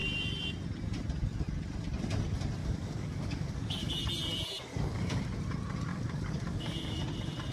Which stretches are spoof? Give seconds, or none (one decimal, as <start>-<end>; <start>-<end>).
2.6-4.0; 4.7-5.2; 5.9-7.0